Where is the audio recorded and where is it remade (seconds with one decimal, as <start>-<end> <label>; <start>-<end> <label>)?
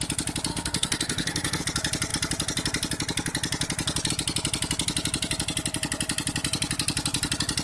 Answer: 0.0-0.5 recorded; 0.5-1.6 remade; 1.6-7.6 recorded